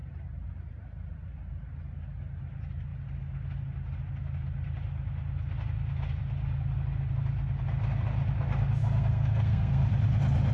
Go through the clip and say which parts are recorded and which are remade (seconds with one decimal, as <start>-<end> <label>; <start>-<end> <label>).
0.0-8.8 recorded; 8.8-9.9 remade; 9.9-10.5 recorded